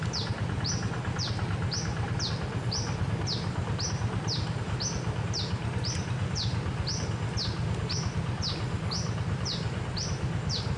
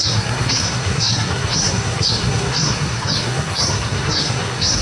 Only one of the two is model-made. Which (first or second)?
second